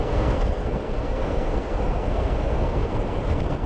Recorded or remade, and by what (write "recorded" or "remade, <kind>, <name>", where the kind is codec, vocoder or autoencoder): remade, codec, SNAC